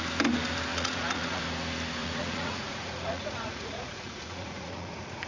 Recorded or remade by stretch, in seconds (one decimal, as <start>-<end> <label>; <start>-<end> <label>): 0.0-0.7 recorded; 0.7-1.4 remade; 1.4-2.0 recorded; 2.0-5.3 remade